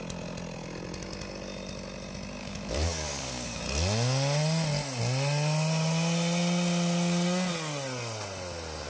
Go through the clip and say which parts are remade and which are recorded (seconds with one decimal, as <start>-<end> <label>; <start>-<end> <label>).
0.0-2.4 recorded; 2.4-3.6 remade; 3.6-8.9 recorded